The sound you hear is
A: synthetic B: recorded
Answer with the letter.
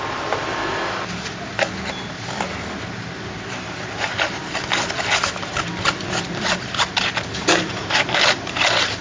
B